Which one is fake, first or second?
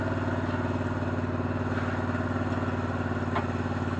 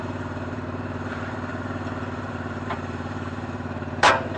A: second